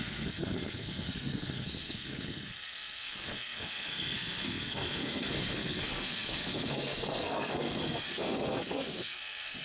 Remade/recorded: remade